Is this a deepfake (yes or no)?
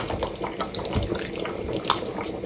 no